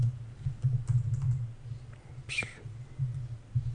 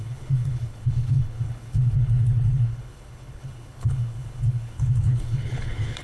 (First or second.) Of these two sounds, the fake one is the second